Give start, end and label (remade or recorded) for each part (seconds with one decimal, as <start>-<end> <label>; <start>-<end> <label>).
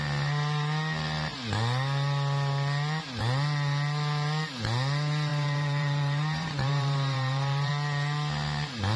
0.0-5.3 recorded; 5.3-7.7 remade; 7.7-9.0 recorded